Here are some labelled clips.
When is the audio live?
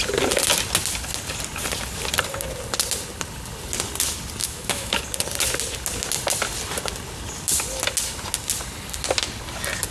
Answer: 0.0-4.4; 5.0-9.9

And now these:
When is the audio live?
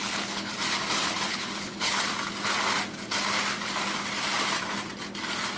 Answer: 0.5-1.3; 2.0-5.6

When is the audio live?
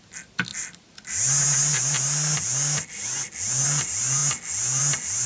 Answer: 0.0-5.3